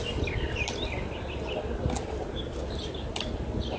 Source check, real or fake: real